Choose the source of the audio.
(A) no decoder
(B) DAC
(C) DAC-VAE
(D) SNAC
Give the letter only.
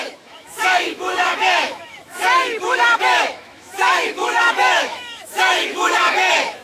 C